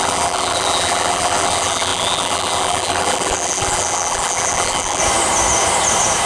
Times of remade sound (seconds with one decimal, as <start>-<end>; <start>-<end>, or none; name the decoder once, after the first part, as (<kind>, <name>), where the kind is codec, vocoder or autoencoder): 0.0-5.0 (vocoder, BigVGAN v2)